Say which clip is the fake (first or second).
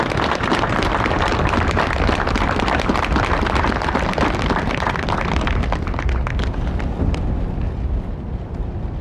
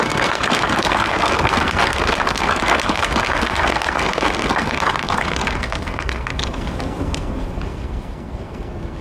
second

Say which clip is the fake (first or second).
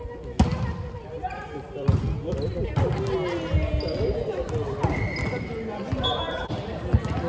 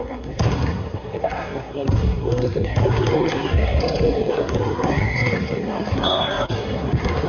second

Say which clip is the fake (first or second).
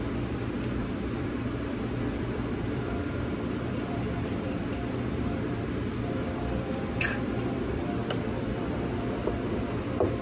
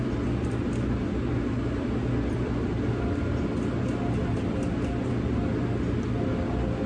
first